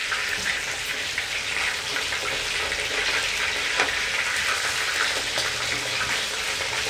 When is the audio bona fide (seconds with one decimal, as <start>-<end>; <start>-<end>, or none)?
1.2-6.9